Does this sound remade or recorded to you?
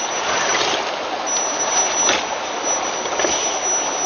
recorded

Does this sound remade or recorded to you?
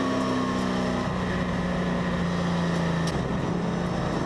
recorded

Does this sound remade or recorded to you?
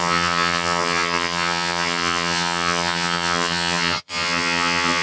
remade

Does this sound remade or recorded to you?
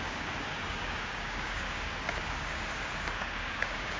remade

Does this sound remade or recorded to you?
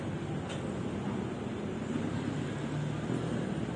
recorded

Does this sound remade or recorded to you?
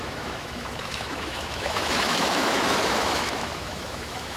remade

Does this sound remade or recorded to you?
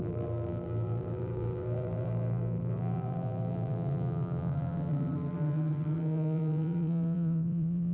remade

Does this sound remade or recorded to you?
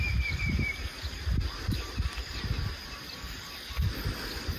recorded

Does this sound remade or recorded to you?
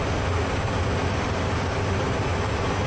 recorded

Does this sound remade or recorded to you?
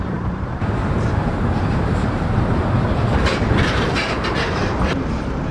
remade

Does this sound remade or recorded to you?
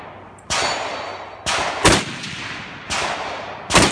recorded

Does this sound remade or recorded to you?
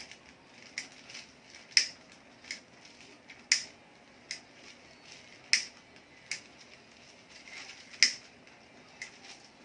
recorded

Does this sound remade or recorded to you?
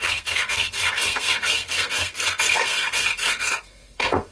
remade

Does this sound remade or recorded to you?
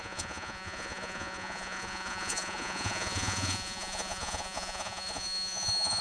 remade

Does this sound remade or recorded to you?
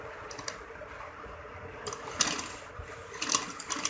recorded